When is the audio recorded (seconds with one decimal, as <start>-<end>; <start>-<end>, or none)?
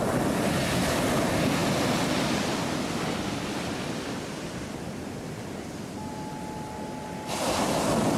0.0-8.2